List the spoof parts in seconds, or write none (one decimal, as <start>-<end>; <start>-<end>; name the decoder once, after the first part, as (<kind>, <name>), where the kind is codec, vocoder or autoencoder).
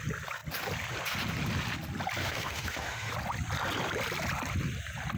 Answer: 2.2-3.1 (autoencoder, DAC-VAE)